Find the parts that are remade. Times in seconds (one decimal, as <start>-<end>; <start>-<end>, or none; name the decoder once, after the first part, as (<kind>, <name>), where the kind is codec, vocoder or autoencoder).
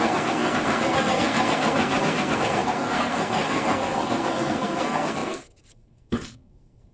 0.0-6.9 (codec, SNAC)